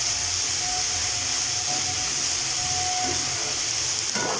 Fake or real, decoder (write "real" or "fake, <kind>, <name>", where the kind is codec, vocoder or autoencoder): real